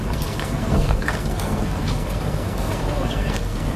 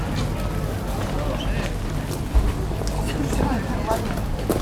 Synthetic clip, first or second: first